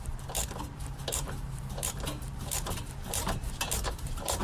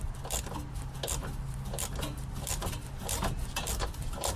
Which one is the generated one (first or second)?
first